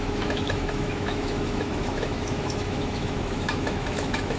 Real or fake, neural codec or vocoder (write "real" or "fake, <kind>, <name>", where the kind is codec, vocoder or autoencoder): fake, autoencoder, DAC-VAE